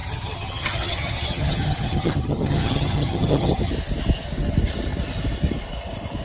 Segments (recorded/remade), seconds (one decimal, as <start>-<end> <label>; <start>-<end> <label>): 0.0-3.7 remade; 3.7-6.2 recorded

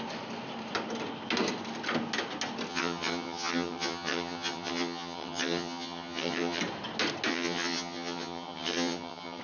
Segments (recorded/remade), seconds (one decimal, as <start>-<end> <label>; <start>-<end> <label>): 0.0-2.7 recorded; 2.7-6.6 remade; 6.6-7.3 recorded; 7.3-9.4 remade

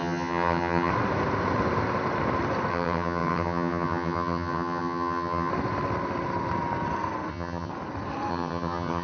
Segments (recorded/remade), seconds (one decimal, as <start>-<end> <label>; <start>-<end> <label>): 0.0-0.9 remade; 0.9-2.7 recorded; 2.7-5.5 remade; 5.5-7.3 recorded; 7.3-7.7 remade; 7.7-8.3 recorded; 8.3-9.0 remade

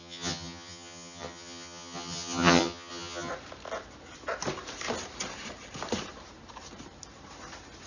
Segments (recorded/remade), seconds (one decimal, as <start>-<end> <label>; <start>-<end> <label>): 0.0-3.3 remade; 3.3-7.9 recorded